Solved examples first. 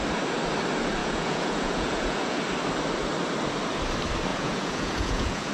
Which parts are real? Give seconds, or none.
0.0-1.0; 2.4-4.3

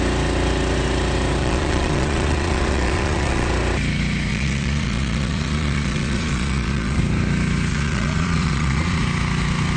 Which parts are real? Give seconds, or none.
0.0-1.4; 3.5-4.3; 7.0-7.7; 9.0-9.8

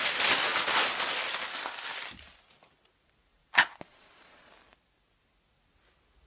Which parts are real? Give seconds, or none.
0.0-3.4; 4.5-6.3

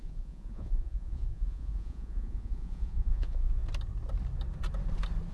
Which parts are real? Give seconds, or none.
3.6-5.3

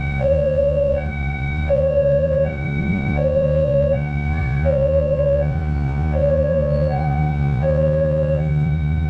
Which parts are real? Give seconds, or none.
none

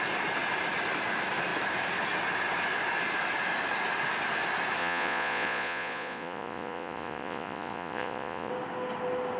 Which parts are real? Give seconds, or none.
0.0-4.8; 8.5-9.4